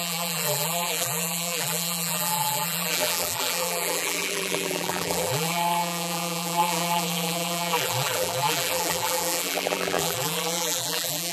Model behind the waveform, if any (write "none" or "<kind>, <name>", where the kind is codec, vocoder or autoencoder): vocoder, BigVGAN v2